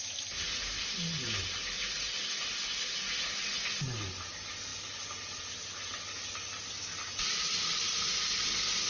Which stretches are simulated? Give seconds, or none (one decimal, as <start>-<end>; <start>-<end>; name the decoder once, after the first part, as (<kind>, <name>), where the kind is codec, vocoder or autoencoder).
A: none